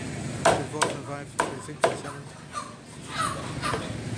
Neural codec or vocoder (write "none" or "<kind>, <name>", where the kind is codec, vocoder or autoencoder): none